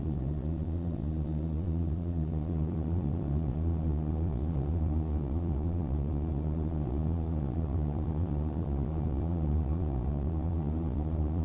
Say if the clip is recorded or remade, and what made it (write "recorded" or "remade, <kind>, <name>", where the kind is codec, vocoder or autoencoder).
remade, vocoder, Vocos